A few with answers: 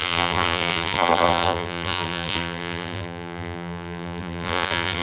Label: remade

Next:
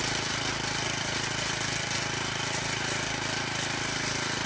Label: recorded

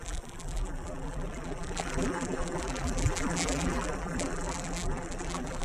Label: remade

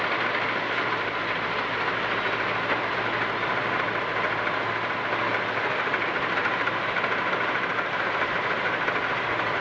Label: recorded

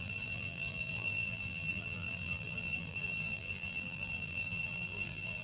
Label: remade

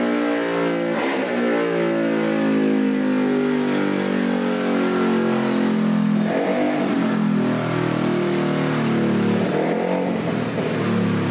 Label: recorded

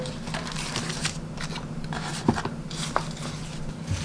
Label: recorded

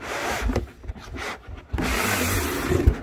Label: recorded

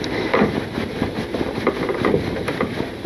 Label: remade